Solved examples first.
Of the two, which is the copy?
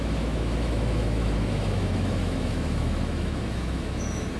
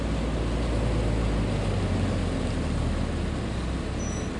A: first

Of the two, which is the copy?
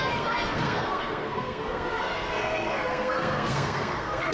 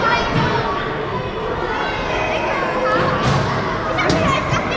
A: first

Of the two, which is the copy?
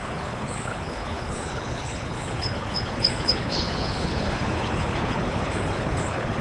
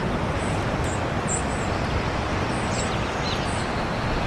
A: first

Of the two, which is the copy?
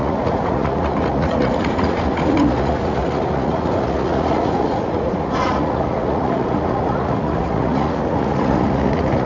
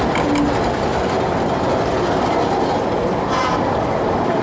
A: first